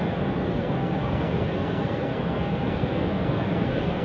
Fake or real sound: fake